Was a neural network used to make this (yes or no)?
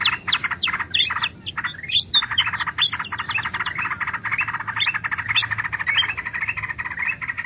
no